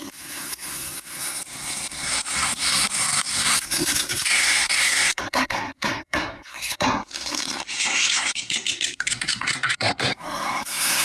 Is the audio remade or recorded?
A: remade